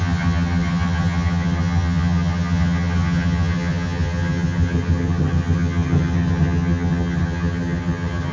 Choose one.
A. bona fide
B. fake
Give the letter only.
B